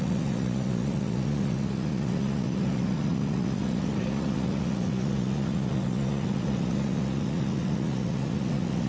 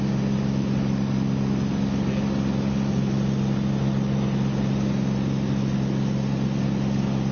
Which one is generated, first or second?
first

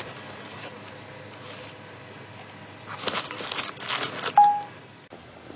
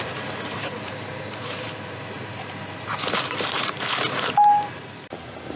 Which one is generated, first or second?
second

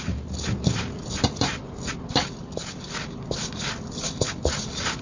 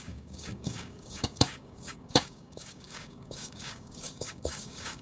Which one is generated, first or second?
second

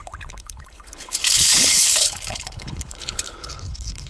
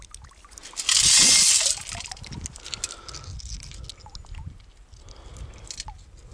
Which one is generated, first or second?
first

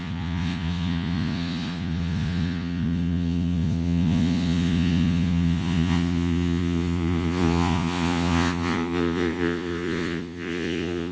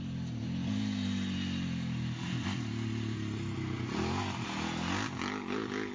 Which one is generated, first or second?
first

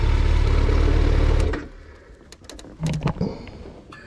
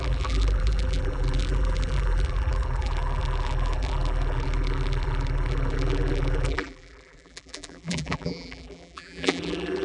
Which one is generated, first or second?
second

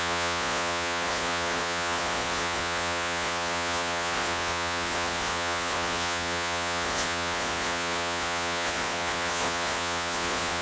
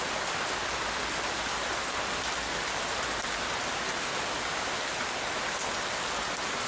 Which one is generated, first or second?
first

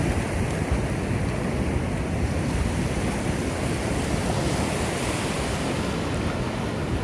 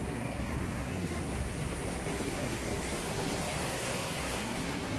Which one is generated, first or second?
second